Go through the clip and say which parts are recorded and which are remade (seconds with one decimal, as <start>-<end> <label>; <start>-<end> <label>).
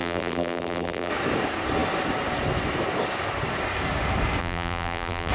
0.0-1.1 remade; 1.1-4.4 recorded; 4.4-5.3 remade